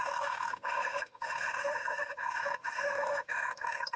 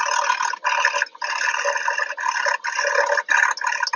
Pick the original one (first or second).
second